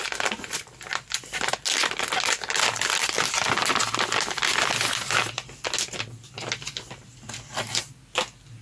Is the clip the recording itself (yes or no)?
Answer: yes